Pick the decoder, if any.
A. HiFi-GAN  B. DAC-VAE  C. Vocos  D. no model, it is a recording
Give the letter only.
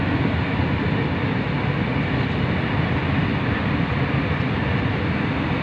D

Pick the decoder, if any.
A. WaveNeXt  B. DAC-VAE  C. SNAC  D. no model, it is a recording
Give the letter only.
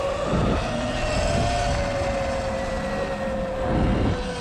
D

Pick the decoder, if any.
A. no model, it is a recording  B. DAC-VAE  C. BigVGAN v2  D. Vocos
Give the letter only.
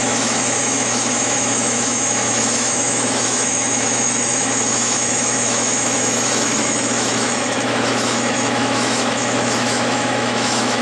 B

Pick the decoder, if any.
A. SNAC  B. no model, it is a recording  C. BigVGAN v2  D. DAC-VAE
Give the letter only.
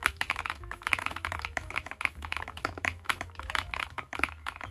D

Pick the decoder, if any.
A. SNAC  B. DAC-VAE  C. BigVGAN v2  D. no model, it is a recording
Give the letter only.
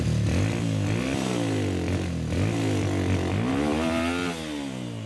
D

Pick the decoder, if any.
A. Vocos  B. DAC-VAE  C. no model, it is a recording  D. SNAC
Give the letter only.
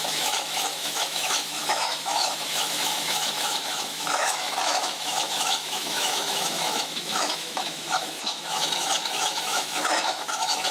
B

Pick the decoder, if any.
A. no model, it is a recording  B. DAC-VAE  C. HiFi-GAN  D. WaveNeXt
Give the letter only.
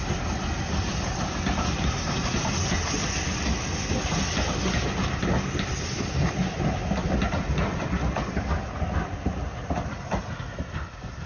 A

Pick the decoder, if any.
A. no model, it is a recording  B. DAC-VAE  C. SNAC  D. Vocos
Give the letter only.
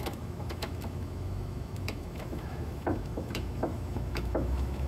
B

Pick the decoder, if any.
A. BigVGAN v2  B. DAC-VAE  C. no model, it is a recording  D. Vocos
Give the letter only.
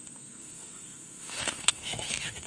B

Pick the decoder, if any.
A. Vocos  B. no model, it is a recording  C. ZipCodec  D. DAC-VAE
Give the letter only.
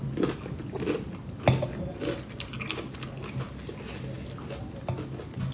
B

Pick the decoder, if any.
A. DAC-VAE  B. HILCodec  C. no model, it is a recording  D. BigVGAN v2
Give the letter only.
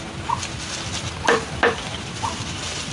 C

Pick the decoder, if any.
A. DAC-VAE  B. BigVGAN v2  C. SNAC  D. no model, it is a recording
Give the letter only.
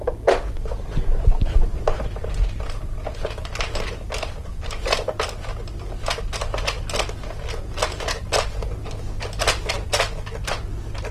D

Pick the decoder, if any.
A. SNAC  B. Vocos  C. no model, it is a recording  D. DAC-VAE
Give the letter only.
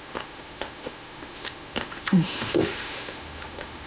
D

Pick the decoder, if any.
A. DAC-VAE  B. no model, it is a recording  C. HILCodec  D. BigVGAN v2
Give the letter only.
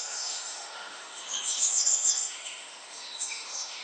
A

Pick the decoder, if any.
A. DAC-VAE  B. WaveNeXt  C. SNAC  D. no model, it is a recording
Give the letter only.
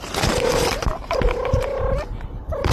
D